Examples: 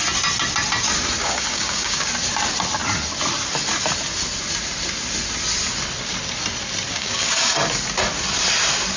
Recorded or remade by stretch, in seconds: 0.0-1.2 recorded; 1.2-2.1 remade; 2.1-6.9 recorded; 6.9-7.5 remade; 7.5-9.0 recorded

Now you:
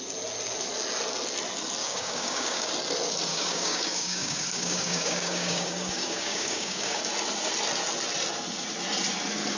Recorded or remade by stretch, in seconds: 0.0-1.8 recorded; 1.8-2.7 remade; 2.7-3.3 recorded; 3.3-7.0 remade; 7.0-9.6 recorded

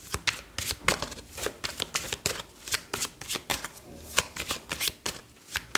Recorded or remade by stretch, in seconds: 0.0-3.5 recorded; 3.5-4.7 remade; 4.7-5.8 recorded

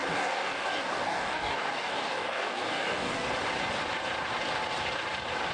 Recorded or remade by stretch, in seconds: 0.0-3.3 remade; 3.3-5.5 recorded